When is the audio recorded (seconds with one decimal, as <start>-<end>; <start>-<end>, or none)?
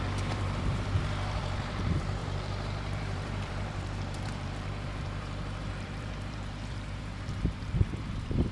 none